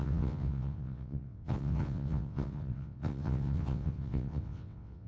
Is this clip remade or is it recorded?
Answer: remade